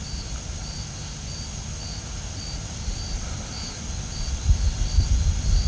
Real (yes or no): yes